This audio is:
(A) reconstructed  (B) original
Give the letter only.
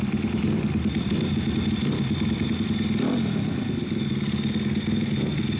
B